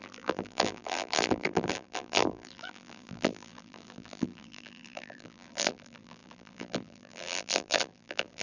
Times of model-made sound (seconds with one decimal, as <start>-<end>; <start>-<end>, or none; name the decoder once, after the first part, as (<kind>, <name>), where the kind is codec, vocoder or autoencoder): 0.0-8.4 (vocoder, BigVGAN v2)